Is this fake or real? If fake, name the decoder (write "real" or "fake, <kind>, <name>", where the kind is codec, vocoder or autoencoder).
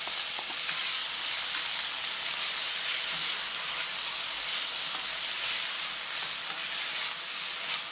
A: real